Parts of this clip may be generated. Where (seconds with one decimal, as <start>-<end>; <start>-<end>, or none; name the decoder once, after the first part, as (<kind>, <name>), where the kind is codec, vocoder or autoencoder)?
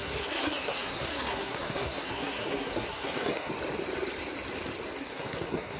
0.0-3.5 (codec, SNAC); 5.0-5.8